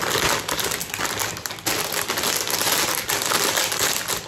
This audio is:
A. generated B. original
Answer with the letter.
B